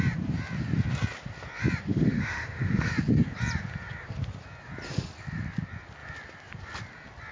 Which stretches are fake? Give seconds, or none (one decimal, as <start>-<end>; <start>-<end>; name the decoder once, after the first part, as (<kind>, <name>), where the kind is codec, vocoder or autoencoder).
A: 1.9-2.9 (autoencoder, DAC-VAE)